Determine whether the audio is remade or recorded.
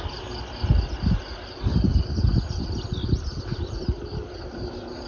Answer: recorded